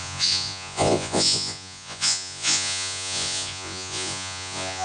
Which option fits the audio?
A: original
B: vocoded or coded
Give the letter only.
B